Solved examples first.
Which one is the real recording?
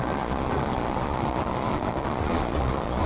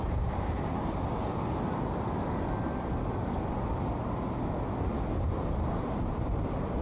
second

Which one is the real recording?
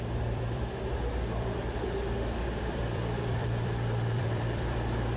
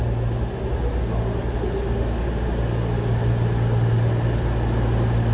second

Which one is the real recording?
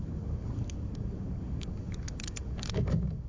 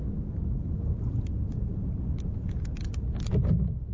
second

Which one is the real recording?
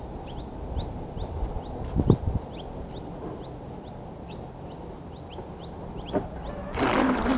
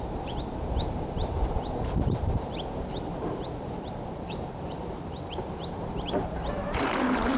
first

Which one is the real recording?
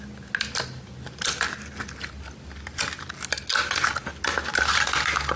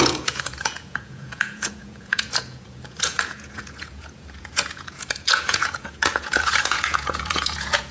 first